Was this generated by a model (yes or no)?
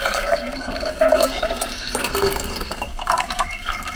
yes